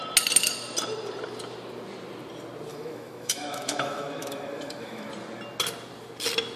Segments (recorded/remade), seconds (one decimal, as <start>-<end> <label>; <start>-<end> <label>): 0.0-2.7 recorded; 2.7-5.1 remade; 5.1-6.6 recorded